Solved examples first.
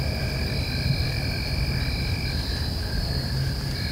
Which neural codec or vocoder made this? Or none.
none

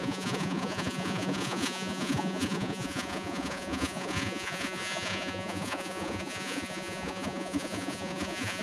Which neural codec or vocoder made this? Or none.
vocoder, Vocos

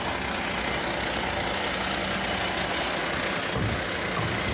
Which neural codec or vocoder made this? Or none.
none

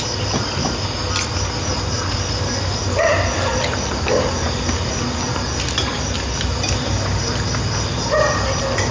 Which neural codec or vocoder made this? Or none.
none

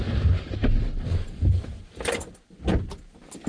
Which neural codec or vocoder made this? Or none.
none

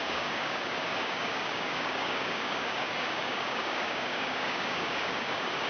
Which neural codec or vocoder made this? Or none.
codec, DAC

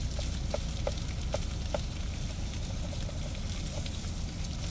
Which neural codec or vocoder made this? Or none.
vocoder, BigVGAN v2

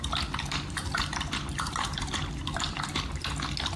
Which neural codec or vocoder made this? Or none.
none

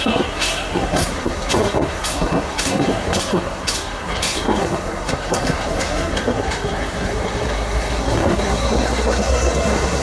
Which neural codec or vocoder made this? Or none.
codec, SNAC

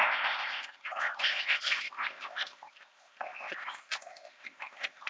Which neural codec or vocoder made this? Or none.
codec, ZipCodec